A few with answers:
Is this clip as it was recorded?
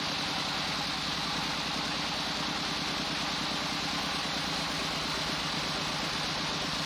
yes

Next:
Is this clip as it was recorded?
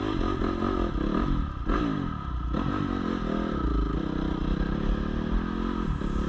yes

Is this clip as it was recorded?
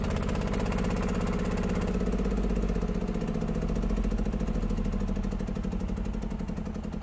yes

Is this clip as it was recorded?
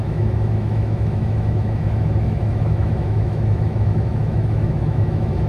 no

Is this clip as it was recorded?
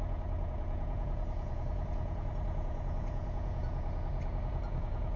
no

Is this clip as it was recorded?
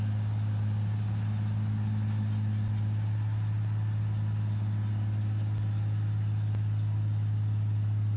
yes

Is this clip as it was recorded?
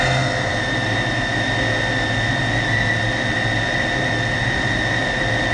yes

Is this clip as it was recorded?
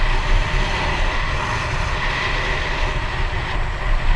yes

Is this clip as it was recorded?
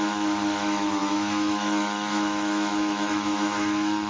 no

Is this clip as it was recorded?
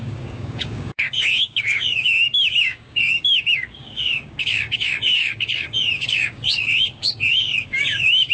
no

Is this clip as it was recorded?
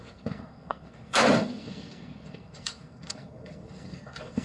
no